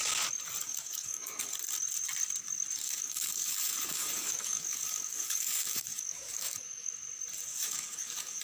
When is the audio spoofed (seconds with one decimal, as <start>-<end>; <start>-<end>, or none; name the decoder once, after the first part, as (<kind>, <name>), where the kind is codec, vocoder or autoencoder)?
0.6-1.5 (codec, DAC); 2.8-6.9; 7.5-8.4